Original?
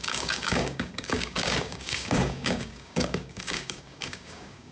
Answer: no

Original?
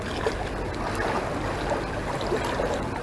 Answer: yes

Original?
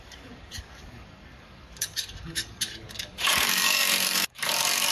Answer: no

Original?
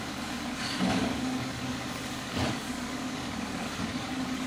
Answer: no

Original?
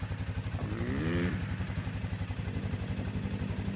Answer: yes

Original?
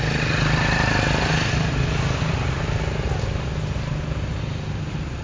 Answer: yes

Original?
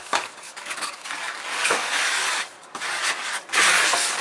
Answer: no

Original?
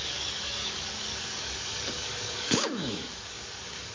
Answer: no